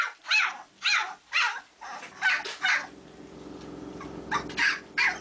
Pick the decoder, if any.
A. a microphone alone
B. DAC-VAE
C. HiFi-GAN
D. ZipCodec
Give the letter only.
A